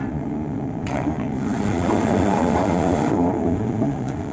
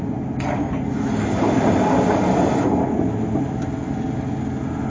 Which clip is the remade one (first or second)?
first